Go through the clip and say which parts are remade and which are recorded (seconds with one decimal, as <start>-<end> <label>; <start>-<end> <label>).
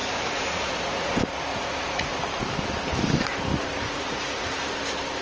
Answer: 0.0-1.1 remade; 1.1-1.5 recorded; 1.5-2.2 remade; 2.2-3.5 recorded; 3.5-4.6 remade; 4.6-5.2 recorded